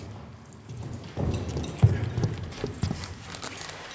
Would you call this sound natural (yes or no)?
yes